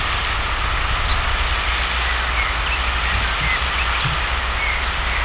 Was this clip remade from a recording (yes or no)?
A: no